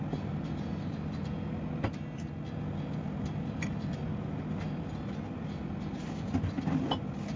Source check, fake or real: real